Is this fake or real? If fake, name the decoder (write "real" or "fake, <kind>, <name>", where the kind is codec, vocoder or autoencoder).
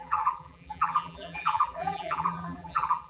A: fake, vocoder, BigVGAN v2